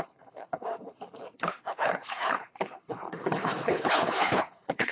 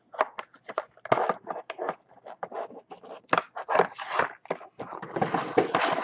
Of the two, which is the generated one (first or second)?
first